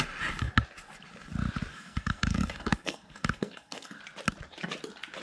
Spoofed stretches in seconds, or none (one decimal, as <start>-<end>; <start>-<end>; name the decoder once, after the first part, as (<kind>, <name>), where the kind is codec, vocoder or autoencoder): 1.7-4.0 (codec, SNAC)